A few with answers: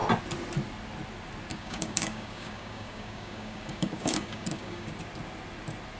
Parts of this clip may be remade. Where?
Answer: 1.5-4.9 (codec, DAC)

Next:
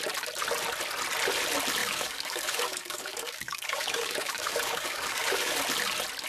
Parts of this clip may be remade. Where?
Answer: 1.8-5.6 (codec, DAC)

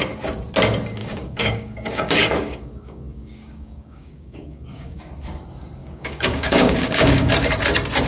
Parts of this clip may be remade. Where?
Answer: 1.0-5.0 (codec, DAC); 5.8-7.3

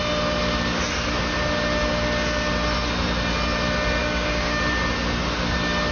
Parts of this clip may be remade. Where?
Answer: 4.0-4.6 (codec, DAC)

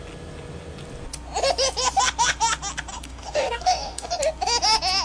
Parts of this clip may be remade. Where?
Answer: 2.9-4.2 (codec, DAC)

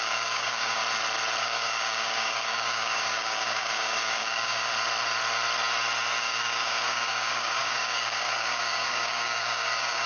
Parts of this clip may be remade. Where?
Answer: 0.0-0.8 (codec, DAC); 1.4-4.7; 6.2-10.1